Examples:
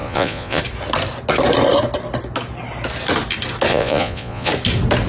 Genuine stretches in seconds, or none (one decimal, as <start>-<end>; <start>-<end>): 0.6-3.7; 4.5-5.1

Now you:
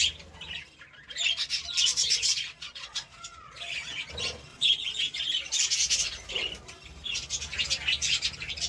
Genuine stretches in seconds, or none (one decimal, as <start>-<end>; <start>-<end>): 0.0-1.9; 4.1-4.5; 5.2-8.7

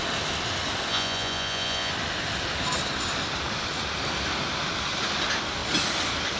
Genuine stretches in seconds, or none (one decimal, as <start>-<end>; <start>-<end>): 0.0-0.9; 1.9-6.4

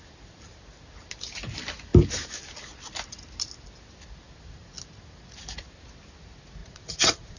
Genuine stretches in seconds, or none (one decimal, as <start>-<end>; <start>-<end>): 0.0-6.6